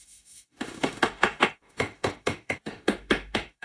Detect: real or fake fake